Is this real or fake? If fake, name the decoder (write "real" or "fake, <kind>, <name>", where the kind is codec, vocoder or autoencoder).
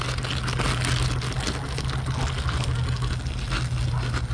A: real